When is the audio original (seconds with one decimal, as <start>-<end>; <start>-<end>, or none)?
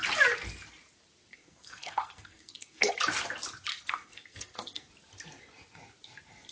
0.0-1.3; 2.9-3.7; 4.9-6.5